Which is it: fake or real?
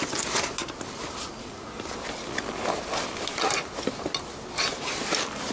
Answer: real